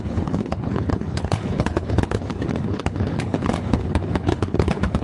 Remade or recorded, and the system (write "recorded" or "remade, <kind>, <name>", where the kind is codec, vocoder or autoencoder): remade, codec, HILCodec